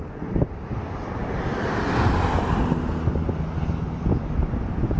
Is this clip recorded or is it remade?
recorded